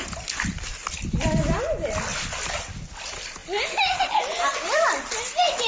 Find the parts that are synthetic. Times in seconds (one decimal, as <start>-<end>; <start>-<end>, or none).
0.7-1.6; 2.1-2.7; 3.4-4.2